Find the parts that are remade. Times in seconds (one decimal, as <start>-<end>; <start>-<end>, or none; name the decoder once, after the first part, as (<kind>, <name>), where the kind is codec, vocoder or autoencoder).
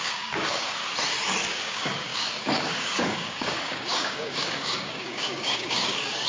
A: 0.0-0.8 (codec, DAC); 1.5-6.3